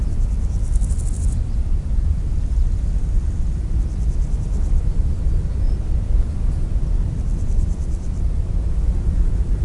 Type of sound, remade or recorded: remade